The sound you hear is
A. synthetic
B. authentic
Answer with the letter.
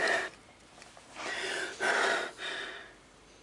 B